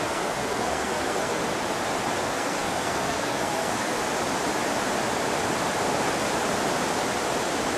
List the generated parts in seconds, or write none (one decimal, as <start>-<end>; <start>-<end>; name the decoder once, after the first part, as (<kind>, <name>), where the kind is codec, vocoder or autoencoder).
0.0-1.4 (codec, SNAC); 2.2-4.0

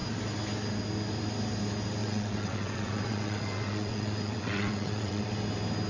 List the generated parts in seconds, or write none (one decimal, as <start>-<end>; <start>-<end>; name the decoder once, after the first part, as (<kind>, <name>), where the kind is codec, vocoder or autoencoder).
2.0-5.3 (vocoder, WaveNeXt)

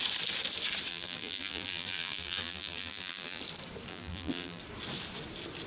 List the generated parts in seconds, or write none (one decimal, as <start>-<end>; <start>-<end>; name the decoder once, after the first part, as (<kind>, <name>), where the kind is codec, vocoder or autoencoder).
0.9-3.4 (vocoder, BigVGAN v2); 3.9-4.6

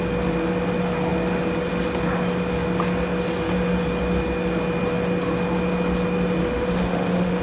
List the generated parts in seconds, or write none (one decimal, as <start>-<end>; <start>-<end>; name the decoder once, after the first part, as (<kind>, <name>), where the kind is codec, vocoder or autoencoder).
6.4-7.4 (autoencoder, DAC-VAE)

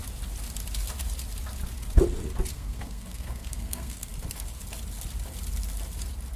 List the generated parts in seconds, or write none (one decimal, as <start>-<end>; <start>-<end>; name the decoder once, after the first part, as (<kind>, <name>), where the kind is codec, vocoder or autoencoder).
2.5-4.1 (codec, SNAC)

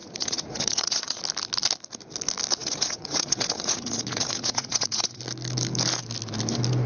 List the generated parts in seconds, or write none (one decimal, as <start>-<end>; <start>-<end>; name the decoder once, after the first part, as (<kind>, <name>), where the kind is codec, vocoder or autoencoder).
0.0-1.2 (vocoder, Vocos); 2.6-5.2

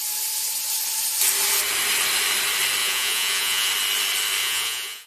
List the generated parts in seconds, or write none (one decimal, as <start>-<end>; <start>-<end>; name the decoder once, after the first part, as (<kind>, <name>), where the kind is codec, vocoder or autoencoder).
2.8-3.7 (vocoder, Vocos); 4.4-5.1